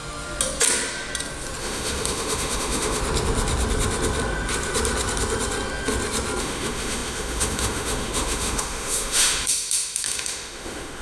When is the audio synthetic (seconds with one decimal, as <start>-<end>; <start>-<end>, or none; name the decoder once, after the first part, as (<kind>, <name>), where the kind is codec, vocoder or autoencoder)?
1.6-3.0 (autoencoder, DAC-VAE); 6.4-11.0